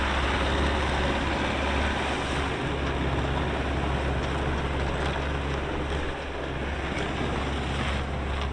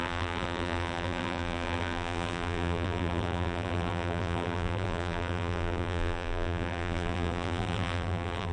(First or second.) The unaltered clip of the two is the first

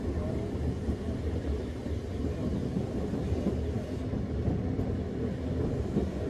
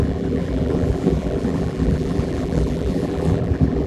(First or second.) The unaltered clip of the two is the first